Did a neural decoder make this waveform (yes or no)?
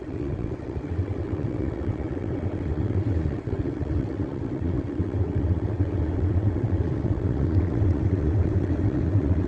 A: yes